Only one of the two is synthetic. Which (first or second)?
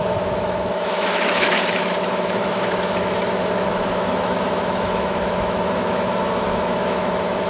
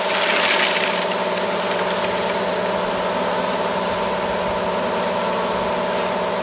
first